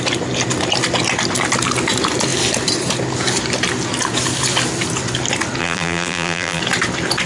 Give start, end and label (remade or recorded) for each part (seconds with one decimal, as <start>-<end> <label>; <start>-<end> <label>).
0.0-5.6 recorded; 5.6-6.6 remade; 6.6-7.3 recorded